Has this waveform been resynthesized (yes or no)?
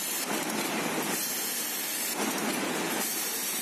no